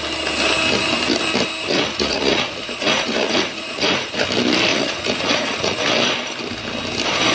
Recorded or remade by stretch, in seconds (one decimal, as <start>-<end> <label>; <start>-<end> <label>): 0.0-1.7 recorded; 1.7-4.2 remade; 4.2-4.7 recorded; 4.7-5.9 remade; 5.9-7.3 recorded